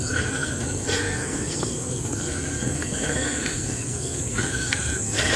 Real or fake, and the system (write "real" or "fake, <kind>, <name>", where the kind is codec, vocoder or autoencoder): fake, codec, SNAC